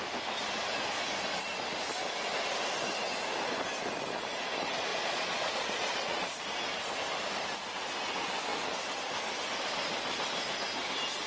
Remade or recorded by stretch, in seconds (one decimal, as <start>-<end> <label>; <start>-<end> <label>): 0.0-4.9 recorded; 4.9-6.4 remade; 6.4-11.3 recorded